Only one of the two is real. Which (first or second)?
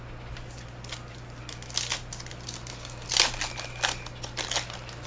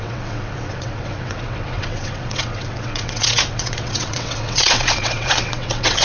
first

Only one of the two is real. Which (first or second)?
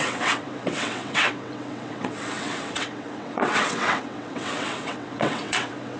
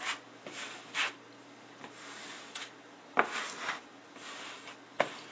second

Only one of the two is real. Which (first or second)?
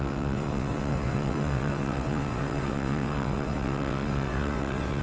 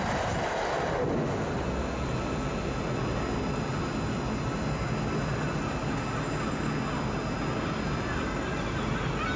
second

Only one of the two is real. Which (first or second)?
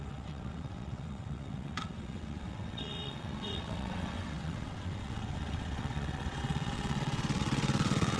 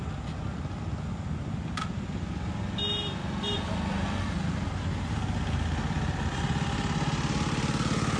second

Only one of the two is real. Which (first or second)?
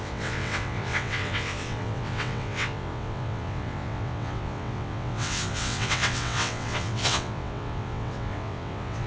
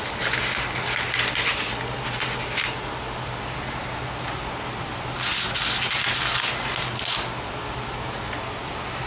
second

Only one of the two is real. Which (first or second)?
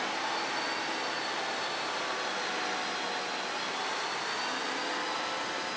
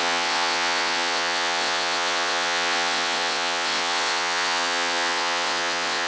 first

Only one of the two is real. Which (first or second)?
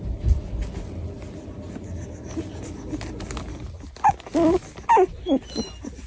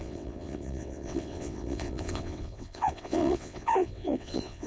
first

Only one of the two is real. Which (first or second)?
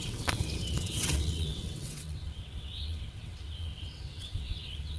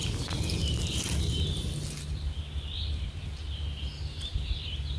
second